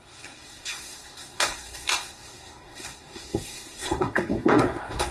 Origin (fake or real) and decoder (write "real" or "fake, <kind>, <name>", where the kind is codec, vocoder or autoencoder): fake, codec, SNAC